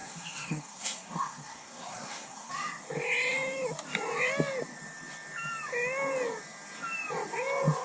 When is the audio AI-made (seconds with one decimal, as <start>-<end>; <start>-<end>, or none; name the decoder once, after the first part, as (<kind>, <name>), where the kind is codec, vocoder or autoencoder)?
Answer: 0.0-2.5 (codec, SNAC)